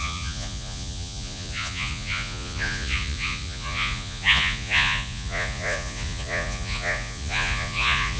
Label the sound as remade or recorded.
remade